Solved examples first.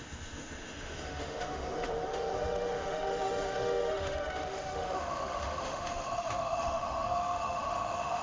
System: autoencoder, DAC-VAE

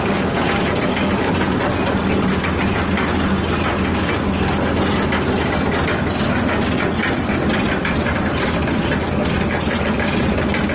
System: none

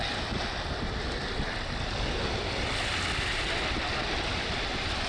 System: none